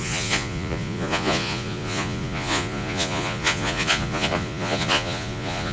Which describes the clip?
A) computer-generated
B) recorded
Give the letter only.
A